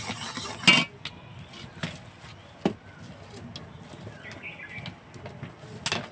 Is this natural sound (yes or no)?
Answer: yes